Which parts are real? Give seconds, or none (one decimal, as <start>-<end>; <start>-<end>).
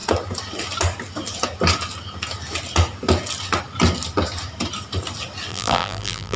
0.0-5.5